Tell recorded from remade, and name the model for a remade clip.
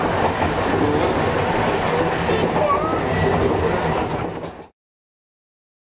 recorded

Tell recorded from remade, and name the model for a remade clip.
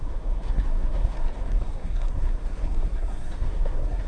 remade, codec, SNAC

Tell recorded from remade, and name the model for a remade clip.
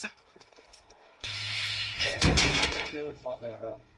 remade, codec, SNAC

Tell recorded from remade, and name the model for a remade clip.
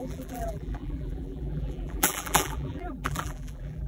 remade, vocoder, BigVGAN v2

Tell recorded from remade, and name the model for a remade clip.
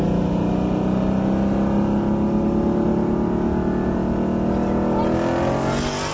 recorded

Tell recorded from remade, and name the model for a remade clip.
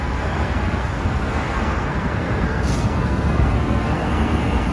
remade, codec, SNAC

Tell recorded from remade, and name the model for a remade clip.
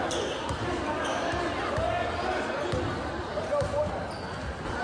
recorded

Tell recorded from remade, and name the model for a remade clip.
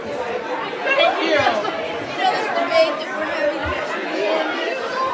recorded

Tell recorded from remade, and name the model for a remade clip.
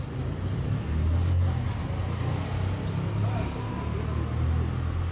recorded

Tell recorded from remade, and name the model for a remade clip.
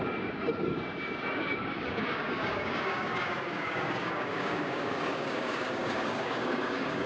remade, codec, DAC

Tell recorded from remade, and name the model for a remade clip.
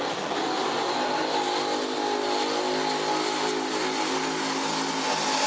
recorded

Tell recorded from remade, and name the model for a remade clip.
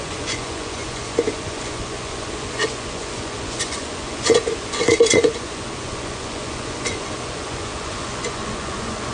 remade, vocoder, Vocos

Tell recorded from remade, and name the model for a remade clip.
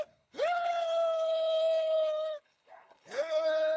remade, codec, HILCodec